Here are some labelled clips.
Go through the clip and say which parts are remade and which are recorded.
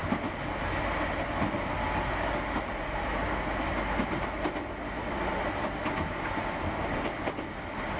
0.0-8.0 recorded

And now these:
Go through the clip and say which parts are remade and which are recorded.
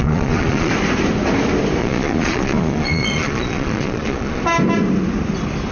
0.0-0.7 remade; 0.7-1.8 recorded; 1.8-4.4 remade; 4.4-5.7 recorded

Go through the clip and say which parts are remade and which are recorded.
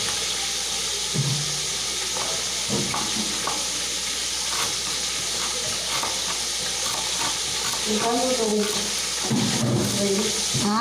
0.0-10.8 recorded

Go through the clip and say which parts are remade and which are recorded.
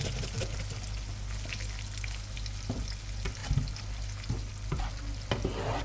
0.0-5.8 recorded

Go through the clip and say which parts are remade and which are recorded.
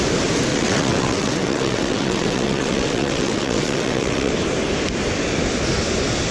0.0-0.5 recorded; 0.5-4.3 remade; 4.3-6.3 recorded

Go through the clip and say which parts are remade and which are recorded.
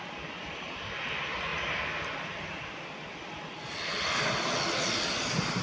0.0-5.6 recorded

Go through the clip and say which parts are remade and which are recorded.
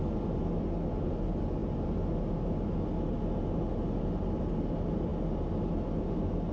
0.0-6.5 recorded